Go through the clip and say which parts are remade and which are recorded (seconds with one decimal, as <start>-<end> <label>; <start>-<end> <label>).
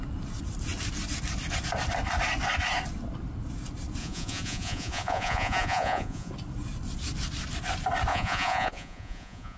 0.0-4.0 recorded; 4.0-6.3 remade; 6.3-8.1 recorded; 8.1-9.6 remade